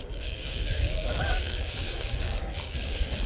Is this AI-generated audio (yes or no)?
yes